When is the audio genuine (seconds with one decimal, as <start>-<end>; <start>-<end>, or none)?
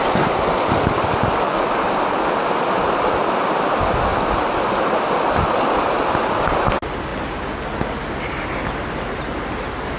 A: 0.0-10.0